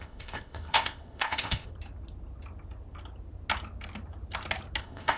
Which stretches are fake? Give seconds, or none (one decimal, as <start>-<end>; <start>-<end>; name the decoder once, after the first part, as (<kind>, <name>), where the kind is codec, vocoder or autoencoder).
0.0-1.7 (codec, ZipCodec); 4.8-5.2